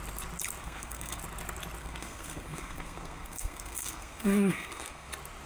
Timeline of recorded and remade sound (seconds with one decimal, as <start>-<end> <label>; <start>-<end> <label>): 0.0-0.6 recorded; 0.6-1.2 remade; 1.2-1.8 recorded; 1.8-5.1 remade; 5.1-5.5 recorded